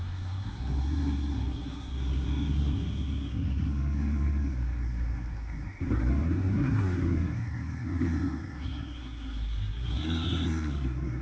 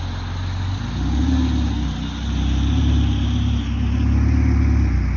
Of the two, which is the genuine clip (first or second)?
second